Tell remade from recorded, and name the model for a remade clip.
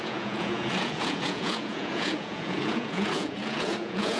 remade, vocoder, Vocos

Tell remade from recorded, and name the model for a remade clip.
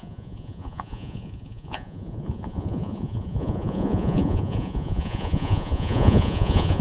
remade, vocoder, Vocos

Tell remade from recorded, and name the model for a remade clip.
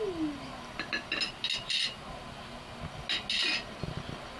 recorded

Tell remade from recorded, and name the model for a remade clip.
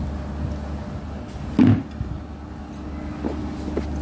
recorded